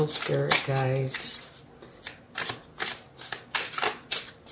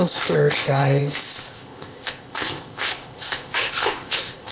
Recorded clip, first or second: first